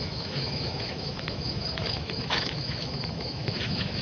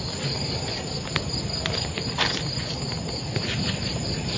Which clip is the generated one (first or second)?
first